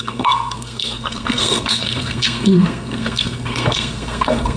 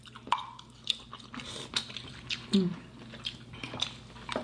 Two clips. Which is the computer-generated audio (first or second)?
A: first